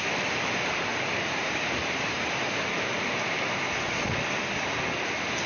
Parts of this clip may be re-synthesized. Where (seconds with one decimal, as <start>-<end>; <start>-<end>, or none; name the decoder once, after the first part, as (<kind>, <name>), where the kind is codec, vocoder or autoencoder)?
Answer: 0.9-3.6 (vocoder, BigVGAN v2)